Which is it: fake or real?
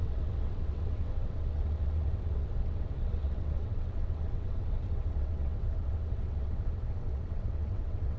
fake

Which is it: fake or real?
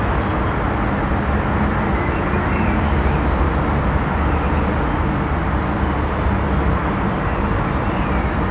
real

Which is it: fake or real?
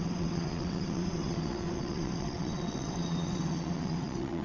fake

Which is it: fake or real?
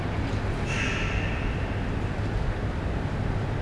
real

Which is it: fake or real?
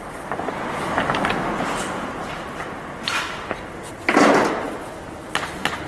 real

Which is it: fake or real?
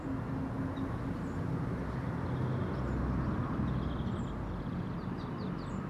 real